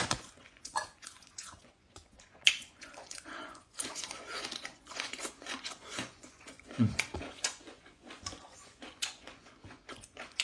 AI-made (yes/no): yes